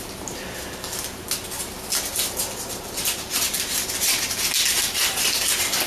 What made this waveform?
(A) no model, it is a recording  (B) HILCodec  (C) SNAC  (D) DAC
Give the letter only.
A